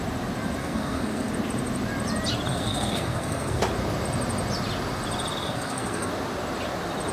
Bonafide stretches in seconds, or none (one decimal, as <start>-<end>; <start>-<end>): 0.0-0.6; 1.3-2.5; 3.6-5.4; 6.1-7.1